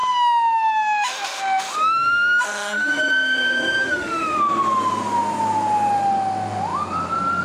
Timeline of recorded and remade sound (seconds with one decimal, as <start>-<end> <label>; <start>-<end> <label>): 0.0-4.4 remade; 4.4-7.4 recorded